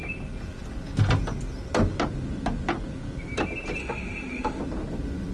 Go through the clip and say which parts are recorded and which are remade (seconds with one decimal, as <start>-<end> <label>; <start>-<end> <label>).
0.0-3.8 recorded; 3.8-4.6 remade; 4.6-5.3 recorded